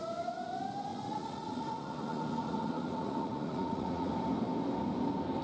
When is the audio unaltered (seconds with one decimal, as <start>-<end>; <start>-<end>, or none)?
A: 0.0-0.9; 4.1-5.4